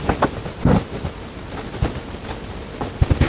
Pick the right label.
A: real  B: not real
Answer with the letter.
A